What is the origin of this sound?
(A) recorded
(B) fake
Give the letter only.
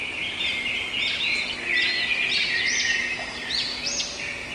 A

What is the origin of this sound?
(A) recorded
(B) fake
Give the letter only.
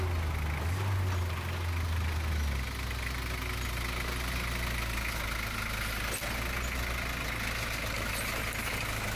A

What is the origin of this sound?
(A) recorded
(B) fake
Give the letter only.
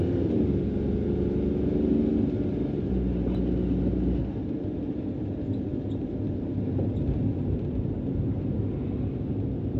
A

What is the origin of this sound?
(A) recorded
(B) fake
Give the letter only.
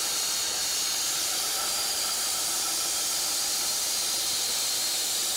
B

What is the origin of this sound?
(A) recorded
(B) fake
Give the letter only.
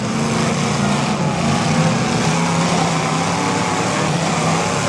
A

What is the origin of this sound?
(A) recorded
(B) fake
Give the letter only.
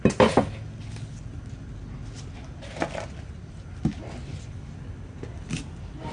A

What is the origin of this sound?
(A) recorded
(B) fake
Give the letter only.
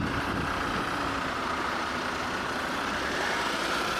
A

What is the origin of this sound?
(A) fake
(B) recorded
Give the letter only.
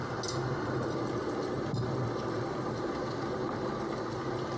B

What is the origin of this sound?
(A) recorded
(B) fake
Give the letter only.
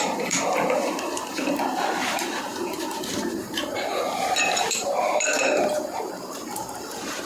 B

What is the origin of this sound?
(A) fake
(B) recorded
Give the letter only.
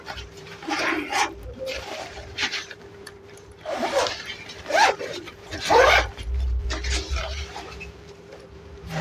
A